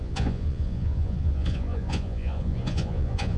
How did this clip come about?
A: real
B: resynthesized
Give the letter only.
B